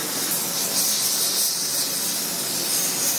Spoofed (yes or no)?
no